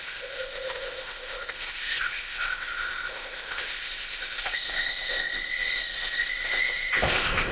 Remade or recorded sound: remade